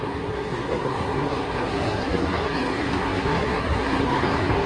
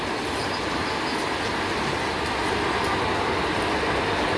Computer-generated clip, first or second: first